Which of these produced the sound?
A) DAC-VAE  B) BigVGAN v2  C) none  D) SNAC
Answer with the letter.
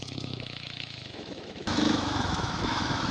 A